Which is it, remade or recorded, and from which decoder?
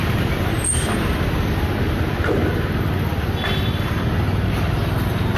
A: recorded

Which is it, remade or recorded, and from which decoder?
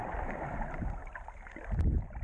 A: recorded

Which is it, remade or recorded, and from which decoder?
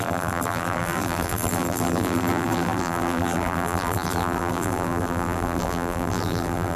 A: remade, vocoder, BigVGAN v2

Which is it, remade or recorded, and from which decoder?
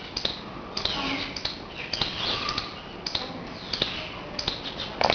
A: recorded